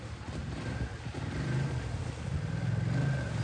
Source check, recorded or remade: recorded